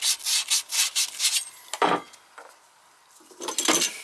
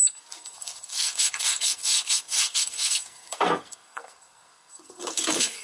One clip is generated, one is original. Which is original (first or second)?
first